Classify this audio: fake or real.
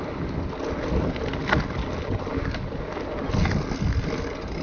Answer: real